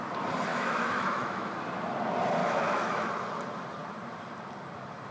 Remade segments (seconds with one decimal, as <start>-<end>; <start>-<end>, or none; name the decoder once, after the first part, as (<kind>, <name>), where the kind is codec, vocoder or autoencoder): 0.5-1.5 (autoencoder, DAC-VAE); 2.4-3.1